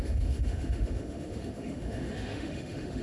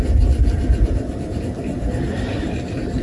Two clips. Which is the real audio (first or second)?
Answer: second